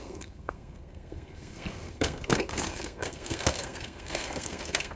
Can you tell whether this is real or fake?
fake